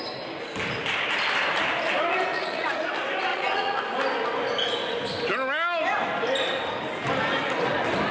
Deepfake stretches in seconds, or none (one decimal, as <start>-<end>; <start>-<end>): 2.3-2.9; 3.3-3.8